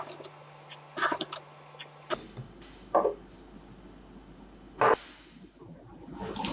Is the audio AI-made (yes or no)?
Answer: no